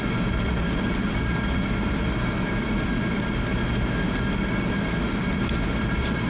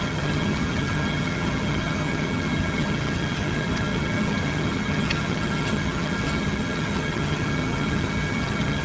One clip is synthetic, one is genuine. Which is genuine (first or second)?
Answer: first